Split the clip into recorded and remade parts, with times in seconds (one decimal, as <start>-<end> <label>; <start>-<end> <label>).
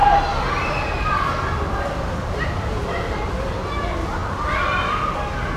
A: 0.0-5.6 recorded